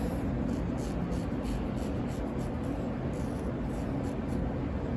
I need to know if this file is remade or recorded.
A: recorded